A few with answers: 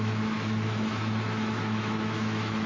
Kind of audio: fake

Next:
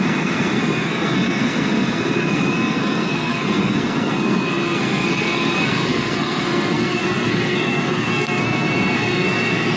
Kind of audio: fake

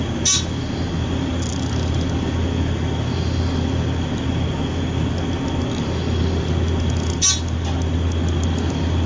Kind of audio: real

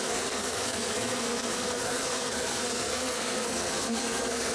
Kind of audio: fake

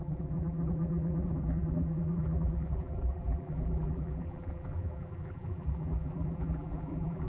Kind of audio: fake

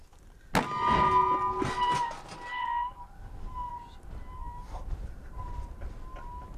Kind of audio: real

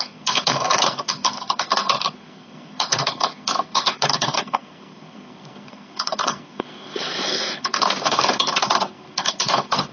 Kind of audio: fake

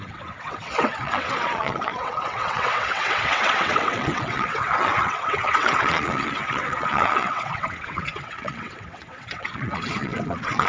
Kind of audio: fake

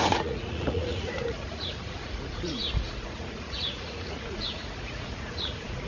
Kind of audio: fake